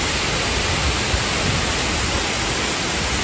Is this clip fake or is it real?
real